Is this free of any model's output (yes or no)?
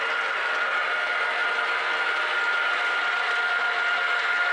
yes